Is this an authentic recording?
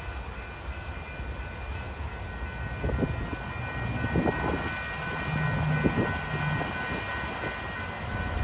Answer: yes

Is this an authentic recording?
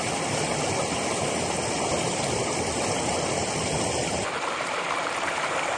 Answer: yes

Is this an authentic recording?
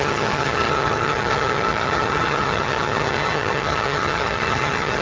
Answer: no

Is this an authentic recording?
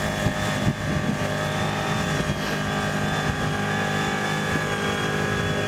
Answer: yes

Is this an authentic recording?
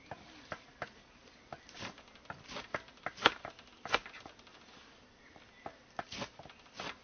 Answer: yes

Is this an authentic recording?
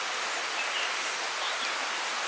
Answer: yes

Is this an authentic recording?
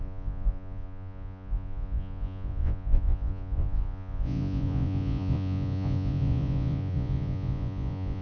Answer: no